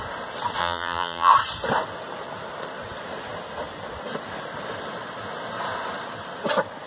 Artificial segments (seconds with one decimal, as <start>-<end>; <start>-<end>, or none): 0.6-1.3

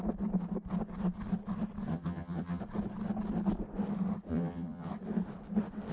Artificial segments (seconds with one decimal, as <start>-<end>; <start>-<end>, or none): 1.9-2.6; 4.3-4.9

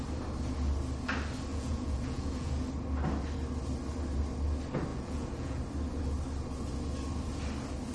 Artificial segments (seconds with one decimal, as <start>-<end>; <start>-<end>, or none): 1.5-2.5; 4.9-5.6

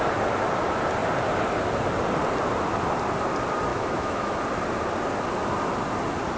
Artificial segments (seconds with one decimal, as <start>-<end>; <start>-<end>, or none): 3.7-4.3

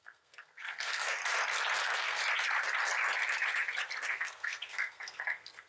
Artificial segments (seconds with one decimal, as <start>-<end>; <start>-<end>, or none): 0.0-1.2; 1.8-2.2; 4.1-5.7

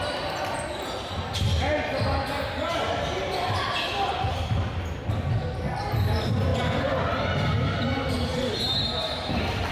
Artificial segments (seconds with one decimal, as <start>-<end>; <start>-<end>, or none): none